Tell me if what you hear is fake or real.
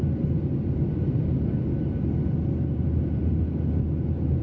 real